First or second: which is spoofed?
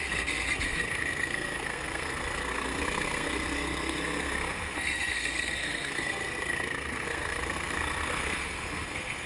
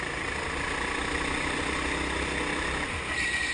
first